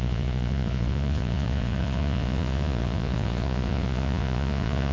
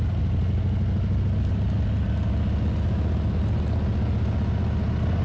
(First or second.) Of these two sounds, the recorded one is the second